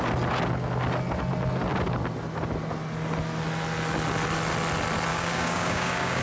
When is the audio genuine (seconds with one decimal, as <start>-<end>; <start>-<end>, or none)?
0.0-5.1